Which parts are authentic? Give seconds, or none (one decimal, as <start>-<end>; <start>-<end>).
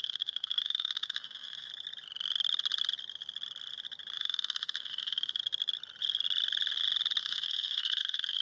1.7-4.2; 5.4-7.2